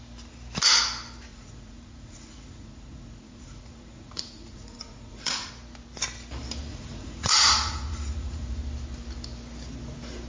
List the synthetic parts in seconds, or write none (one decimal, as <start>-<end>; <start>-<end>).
1.3-5.5; 6.7-8.6